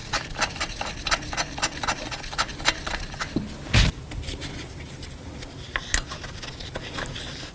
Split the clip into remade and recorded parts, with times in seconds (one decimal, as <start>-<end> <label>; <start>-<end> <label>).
0.0-7.5 recorded